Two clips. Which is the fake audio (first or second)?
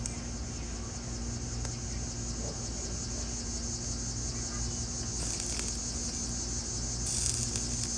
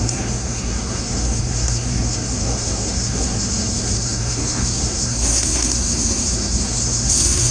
second